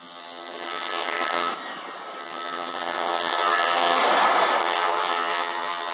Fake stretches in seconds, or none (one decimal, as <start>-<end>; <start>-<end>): 0.0-1.5; 2.2-4.0; 4.6-5.9